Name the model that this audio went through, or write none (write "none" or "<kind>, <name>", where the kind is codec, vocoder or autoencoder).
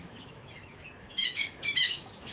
autoencoder, DAC-VAE